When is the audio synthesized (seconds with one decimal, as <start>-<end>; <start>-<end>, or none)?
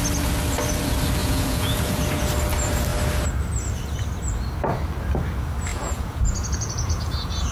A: 1.2-2.3; 5.7-7.5